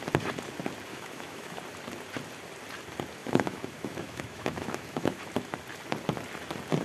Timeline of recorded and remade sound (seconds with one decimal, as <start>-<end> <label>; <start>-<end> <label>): 0.0-0.9 recorded; 0.9-1.6 remade; 1.6-3.2 recorded; 3.2-5.2 remade; 5.2-6.8 recorded